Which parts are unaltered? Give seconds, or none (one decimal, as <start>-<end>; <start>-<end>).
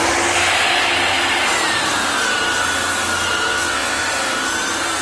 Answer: 0.0-3.5; 4.0-5.0